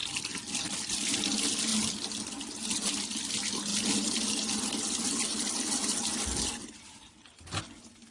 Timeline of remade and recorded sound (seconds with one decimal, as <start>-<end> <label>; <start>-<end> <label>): 0.0-8.1 recorded